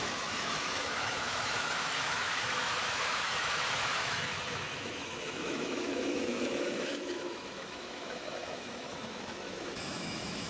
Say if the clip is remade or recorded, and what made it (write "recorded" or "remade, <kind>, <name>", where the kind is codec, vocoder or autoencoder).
remade, autoencoder, DAC-VAE